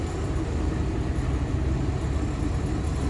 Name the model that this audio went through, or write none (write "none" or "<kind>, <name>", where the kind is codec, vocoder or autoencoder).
none